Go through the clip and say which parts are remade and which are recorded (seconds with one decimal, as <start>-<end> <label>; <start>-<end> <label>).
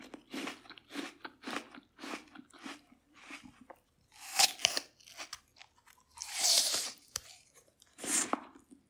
0.0-6.2 recorded; 6.2-8.3 remade; 8.3-8.9 recorded